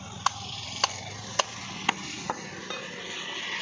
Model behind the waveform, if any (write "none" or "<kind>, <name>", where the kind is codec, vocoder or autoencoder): none